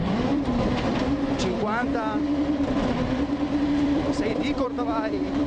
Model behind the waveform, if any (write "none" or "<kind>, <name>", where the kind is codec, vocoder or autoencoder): vocoder, BigVGAN v2